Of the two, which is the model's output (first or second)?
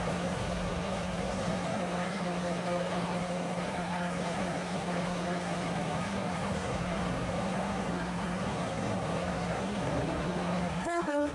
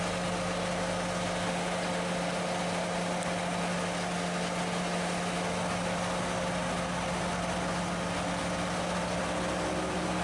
first